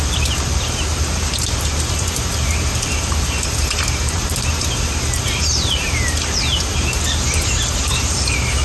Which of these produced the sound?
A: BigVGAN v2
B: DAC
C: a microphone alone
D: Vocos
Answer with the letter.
A